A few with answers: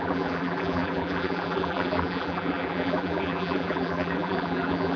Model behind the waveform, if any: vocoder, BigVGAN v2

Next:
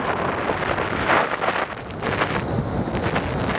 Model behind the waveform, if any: none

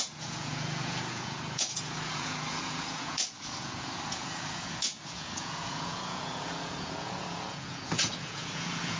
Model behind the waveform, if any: vocoder, Vocos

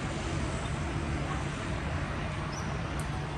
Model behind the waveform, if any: none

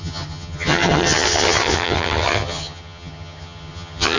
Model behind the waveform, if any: vocoder, HiFi-GAN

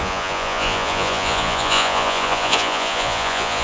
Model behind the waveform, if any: vocoder, Vocos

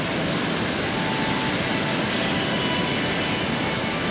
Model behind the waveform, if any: none